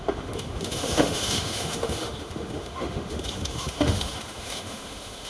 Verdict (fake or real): fake